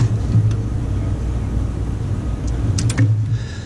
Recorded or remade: recorded